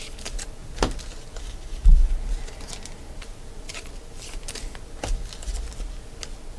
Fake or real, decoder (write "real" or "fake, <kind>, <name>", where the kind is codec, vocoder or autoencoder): real